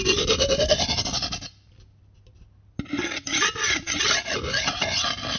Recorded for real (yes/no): yes